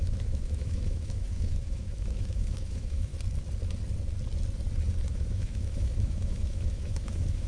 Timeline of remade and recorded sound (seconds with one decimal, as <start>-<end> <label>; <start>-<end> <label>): 0.0-3.1 remade; 3.1-5.1 recorded; 5.1-7.5 remade